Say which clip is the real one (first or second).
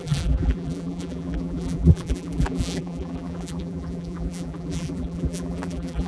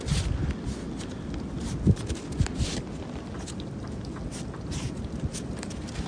second